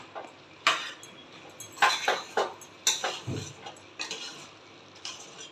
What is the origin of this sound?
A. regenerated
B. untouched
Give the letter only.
B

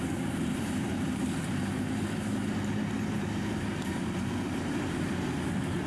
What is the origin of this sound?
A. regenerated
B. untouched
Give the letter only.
A